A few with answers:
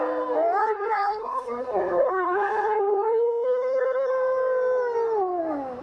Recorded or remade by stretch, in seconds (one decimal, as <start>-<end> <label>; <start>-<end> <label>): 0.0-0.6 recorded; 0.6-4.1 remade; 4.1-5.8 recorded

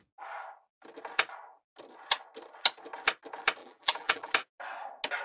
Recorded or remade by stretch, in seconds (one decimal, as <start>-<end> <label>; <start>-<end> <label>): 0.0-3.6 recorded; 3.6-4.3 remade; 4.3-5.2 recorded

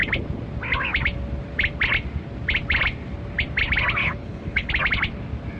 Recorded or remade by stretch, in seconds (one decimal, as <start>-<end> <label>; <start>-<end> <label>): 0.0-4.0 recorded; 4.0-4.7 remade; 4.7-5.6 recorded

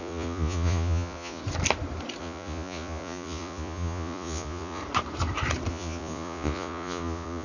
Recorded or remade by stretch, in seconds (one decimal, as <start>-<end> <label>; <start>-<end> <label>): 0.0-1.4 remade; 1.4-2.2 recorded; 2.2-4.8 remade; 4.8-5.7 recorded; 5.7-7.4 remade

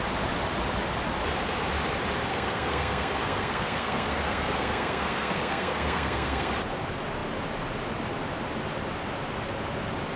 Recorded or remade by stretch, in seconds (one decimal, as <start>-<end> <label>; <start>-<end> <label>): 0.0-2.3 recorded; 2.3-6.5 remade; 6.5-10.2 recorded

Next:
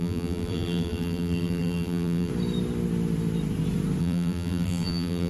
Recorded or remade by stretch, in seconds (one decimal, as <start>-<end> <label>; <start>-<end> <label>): 0.0-2.3 remade; 2.3-4.0 recorded; 4.0-5.3 remade